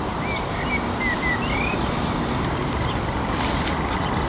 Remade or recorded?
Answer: recorded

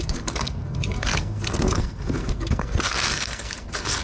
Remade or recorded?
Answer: remade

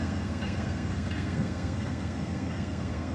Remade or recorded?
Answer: remade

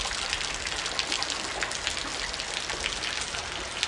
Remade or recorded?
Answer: recorded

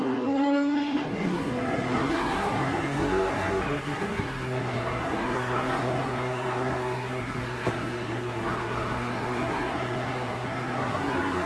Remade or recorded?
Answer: remade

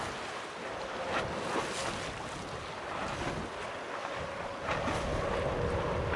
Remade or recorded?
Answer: recorded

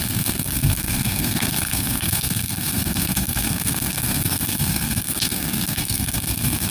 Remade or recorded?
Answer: remade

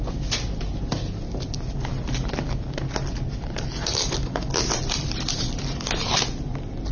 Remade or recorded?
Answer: recorded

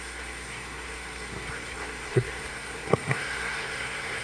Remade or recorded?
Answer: remade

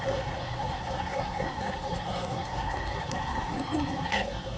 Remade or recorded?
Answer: remade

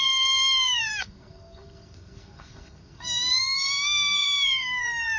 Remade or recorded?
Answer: remade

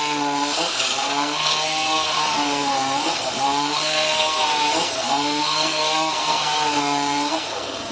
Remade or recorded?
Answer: remade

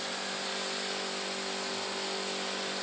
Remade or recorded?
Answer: recorded